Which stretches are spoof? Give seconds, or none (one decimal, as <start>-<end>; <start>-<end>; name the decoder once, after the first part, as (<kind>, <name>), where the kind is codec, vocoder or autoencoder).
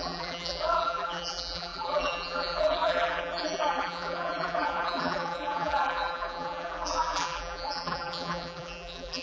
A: 0.0-9.2 (vocoder, BigVGAN v2)